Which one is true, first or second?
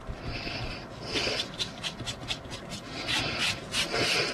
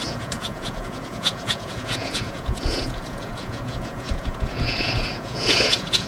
first